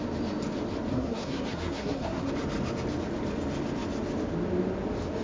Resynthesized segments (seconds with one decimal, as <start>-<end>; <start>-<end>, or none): 0.9-2.3